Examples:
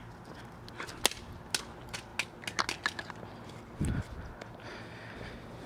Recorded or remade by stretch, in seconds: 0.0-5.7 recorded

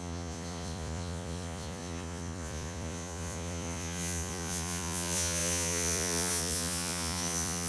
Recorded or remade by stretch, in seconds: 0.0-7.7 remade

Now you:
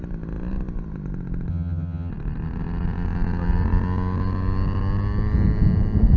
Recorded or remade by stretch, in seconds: 0.0-1.5 recorded; 1.5-2.1 remade; 2.1-6.2 recorded

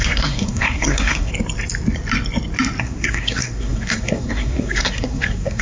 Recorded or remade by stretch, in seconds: 0.0-1.3 remade; 1.3-2.8 recorded; 2.8-5.6 remade

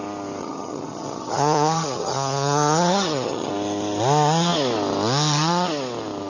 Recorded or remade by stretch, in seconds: 0.0-0.4 recorded; 0.4-3.5 remade; 3.5-6.3 recorded